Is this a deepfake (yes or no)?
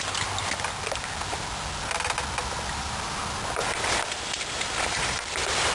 no